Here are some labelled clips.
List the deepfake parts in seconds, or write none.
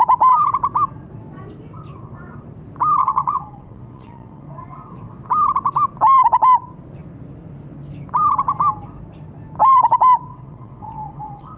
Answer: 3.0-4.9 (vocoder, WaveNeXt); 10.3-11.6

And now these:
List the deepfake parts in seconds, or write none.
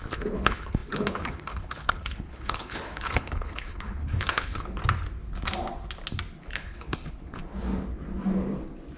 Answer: 0.0-4.8 (codec, HILCodec); 6.4-7.4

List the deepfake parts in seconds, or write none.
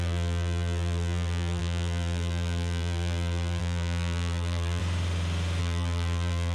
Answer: 0.0-4.8 (vocoder, BigVGAN v2); 5.6-6.5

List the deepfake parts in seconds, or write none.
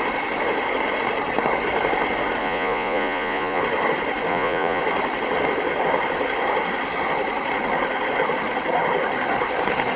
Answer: 2.4-3.6 (vocoder, Vocos); 4.3-4.8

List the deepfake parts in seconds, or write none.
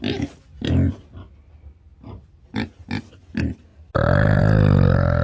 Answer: none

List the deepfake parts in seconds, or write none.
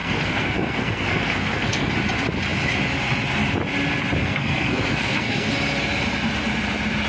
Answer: 0.0-1.9 (codec, SNAC); 4.2-5.5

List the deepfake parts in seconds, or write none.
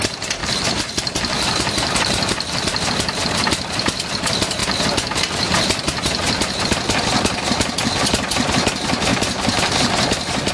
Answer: 0.4-2.8 (vocoder, BigVGAN v2); 9.1-10.5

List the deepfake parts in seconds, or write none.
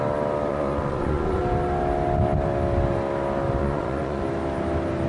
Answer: 0.5-1.4 (vocoder, Vocos); 3.6-4.2